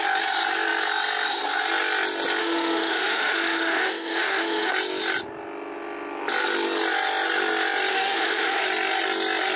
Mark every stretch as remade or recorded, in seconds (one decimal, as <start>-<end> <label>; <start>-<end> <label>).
0.0-2.4 recorded; 2.4-4.7 remade; 4.7-7.9 recorded; 7.9-8.6 remade; 8.6-9.6 recorded